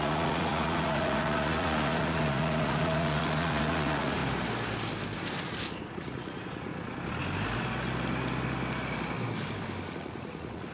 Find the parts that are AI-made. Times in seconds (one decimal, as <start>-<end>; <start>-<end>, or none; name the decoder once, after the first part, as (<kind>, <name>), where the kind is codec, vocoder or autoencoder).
0.0-4.2 (vocoder, Vocos); 5.9-6.7; 9.9-10.7